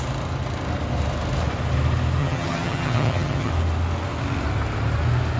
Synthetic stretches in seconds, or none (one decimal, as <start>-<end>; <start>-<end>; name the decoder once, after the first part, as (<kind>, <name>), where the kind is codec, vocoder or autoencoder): 2.2-3.5 (vocoder, HiFi-GAN)